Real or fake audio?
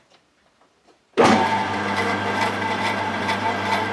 fake